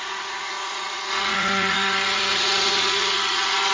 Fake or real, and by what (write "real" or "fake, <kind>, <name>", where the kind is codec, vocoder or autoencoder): fake, vocoder, Vocos